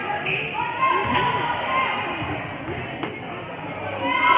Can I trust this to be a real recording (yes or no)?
yes